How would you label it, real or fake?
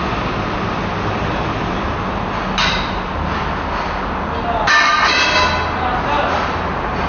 real